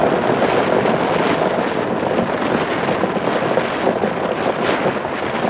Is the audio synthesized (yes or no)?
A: no